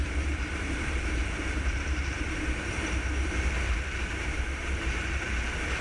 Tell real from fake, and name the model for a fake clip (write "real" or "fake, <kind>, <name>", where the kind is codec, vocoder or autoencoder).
fake, vocoder, BigVGAN v2